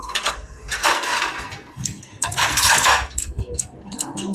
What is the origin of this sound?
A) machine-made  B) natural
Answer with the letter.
A